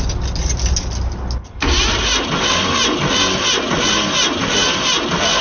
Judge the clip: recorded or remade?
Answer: recorded